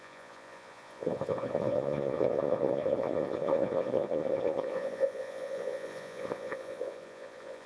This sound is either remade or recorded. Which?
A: remade